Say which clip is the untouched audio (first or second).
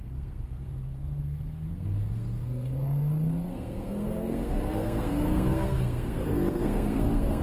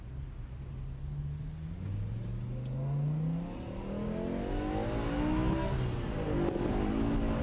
second